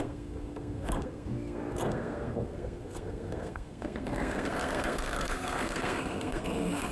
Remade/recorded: remade